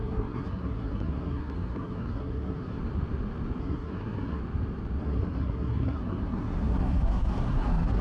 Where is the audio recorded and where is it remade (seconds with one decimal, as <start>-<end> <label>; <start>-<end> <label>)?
0.0-2.8 remade; 2.8-3.6 recorded; 3.6-4.4 remade; 4.4-5.0 recorded; 5.0-8.0 remade